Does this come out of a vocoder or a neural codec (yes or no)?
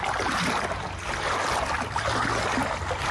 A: no